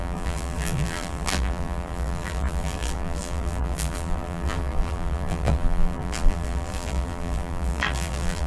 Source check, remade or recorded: remade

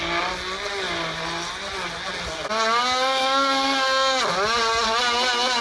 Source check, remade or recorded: recorded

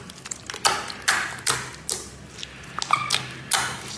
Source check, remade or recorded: recorded